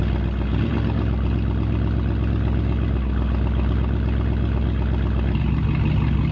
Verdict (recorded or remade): recorded